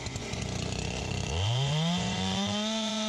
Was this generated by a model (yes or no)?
yes